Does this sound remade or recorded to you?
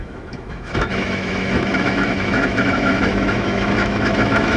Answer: remade